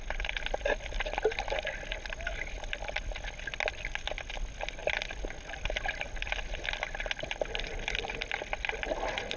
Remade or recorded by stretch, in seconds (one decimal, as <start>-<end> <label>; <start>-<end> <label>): 0.0-9.4 recorded